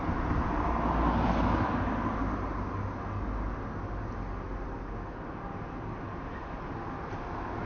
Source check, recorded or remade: recorded